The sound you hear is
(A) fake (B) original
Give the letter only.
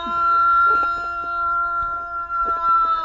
B